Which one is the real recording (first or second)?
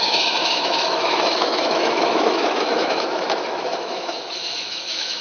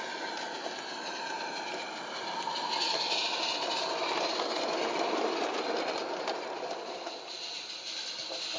second